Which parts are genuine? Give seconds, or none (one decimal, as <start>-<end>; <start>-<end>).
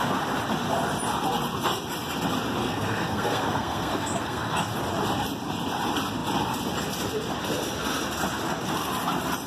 0.0-2.6; 4.7-9.5